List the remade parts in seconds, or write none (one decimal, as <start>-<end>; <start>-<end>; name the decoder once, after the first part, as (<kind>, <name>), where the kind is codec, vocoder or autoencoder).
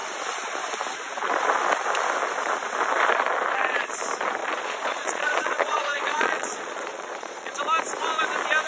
4.4-7.6 (vocoder, Vocos)